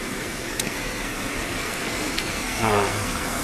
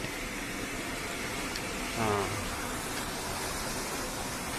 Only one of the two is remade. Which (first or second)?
first